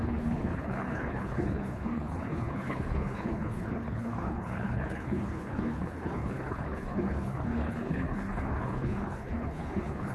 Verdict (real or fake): fake